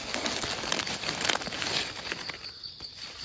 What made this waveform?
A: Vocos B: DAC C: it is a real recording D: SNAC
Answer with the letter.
C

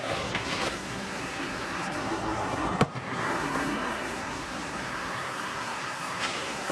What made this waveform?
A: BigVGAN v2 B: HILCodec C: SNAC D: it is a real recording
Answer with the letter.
C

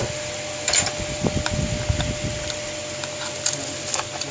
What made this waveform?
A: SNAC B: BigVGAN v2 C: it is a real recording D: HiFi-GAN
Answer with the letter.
C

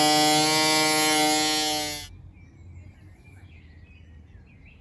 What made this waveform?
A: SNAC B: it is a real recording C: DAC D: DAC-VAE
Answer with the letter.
B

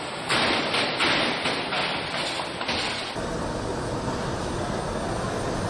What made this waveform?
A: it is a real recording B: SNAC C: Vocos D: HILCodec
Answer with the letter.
A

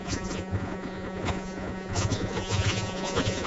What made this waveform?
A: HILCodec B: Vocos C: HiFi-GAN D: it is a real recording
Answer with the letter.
B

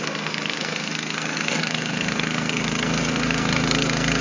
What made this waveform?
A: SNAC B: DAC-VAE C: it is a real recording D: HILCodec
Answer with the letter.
A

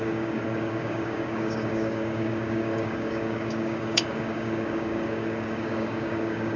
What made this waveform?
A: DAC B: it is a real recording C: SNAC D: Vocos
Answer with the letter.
A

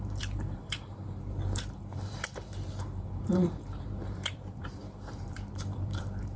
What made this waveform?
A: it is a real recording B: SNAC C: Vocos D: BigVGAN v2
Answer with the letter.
D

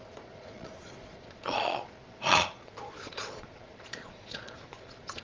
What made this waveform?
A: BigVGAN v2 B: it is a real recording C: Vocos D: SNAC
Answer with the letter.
C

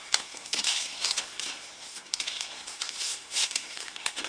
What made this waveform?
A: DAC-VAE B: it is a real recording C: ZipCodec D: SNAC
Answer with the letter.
D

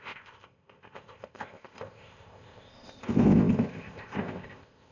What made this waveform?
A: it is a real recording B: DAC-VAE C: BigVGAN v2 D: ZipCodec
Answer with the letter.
D